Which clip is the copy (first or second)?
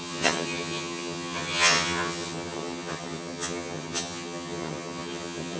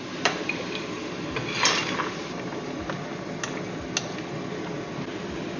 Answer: first